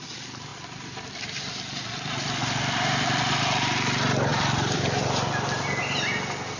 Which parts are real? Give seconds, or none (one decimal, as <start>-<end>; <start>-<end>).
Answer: 0.0-2.4; 3.4-4.3; 5.3-6.6